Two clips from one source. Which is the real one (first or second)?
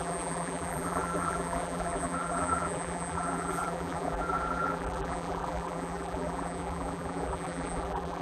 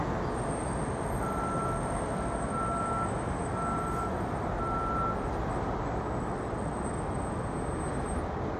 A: second